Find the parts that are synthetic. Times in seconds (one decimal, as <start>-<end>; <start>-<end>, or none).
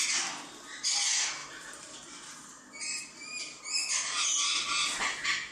1.4-3.6